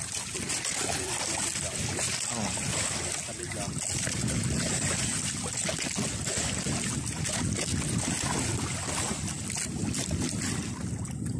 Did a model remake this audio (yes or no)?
no